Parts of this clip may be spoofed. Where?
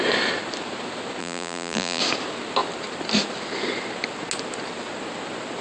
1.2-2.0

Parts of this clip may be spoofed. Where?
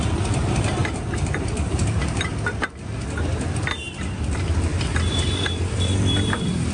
0.0-6.7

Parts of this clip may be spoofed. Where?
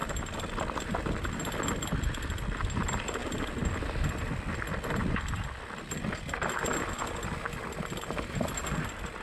0.0-1.3; 3.2-3.7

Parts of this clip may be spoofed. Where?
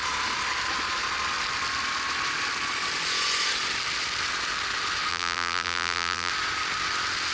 5.1-6.3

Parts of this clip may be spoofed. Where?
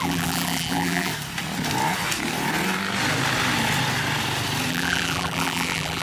0.0-1.1; 4.7-6.0